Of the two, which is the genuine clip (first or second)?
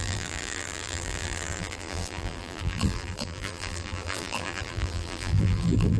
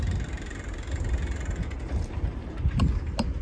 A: second